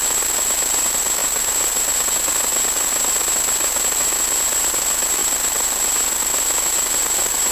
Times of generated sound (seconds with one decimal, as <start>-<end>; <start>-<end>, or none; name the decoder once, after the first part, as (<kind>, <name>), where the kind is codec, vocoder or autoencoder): none